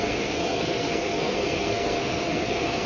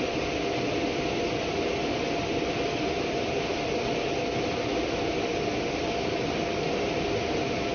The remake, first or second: first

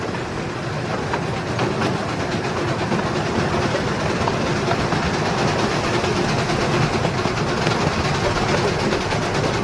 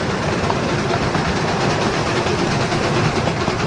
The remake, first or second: second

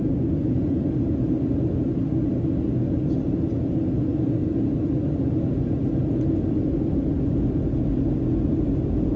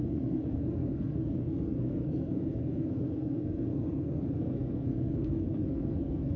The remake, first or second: second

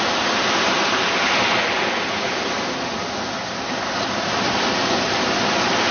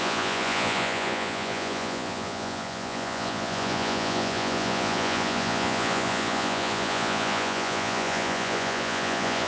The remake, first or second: second